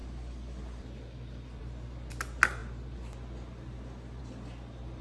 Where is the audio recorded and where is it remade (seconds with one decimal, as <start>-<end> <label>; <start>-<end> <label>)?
0.0-5.0 recorded